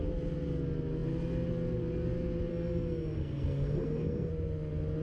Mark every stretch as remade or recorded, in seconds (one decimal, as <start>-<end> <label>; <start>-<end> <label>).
0.0-2.5 recorded; 2.5-4.3 remade; 4.3-5.0 recorded

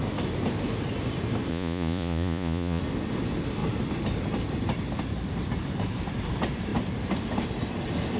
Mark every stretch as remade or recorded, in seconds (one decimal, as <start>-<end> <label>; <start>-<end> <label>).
0.0-1.5 recorded; 1.5-2.8 remade; 2.8-8.2 recorded

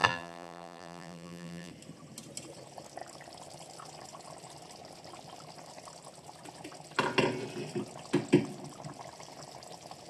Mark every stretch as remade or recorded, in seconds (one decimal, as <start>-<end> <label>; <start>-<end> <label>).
0.0-1.7 remade; 1.7-10.1 recorded

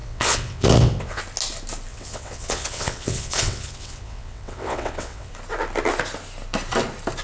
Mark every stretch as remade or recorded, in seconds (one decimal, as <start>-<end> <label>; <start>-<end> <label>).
0.0-1.2 remade; 1.2-1.9 recorded; 1.9-5.3 remade; 5.3-7.2 recorded

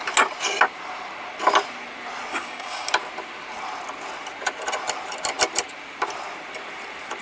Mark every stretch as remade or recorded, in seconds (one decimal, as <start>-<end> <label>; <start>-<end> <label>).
0.0-2.3 recorded; 2.3-2.9 remade; 2.9-7.2 recorded

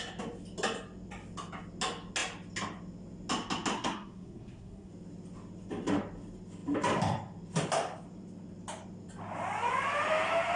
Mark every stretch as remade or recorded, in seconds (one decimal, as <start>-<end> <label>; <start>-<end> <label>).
0.0-3.7 recorded; 3.7-4.9 remade; 4.9-10.6 recorded

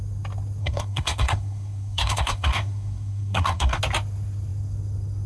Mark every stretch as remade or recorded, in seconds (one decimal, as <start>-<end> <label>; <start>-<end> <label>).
0.0-0.6 recorded; 0.6-3.8 remade; 3.8-5.3 recorded

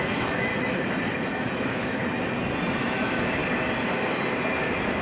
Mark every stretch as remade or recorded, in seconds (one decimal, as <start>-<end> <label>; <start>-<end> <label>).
0.0-0.5 remade; 0.5-1.2 recorded; 1.2-2.0 remade; 2.0-2.8 recorded; 2.8-3.4 remade; 3.4-4.6 recorded; 4.6-5.0 remade